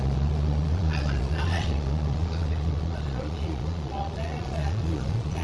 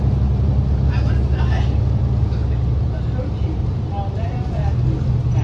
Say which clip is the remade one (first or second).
first